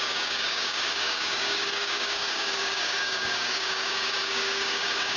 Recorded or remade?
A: remade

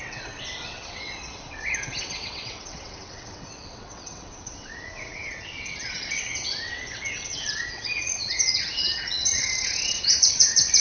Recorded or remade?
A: remade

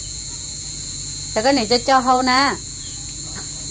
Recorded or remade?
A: remade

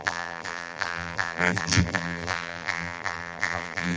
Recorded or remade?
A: remade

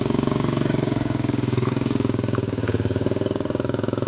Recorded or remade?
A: remade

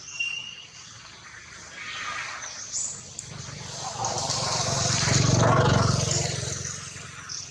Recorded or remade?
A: recorded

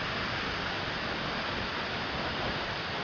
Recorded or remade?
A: recorded